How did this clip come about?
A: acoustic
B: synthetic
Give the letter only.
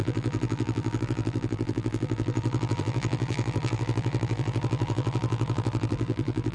B